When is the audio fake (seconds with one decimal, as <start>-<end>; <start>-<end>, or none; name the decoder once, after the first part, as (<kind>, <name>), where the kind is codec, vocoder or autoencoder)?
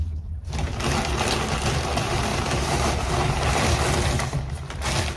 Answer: 2.3-3.8 (vocoder, BigVGAN v2)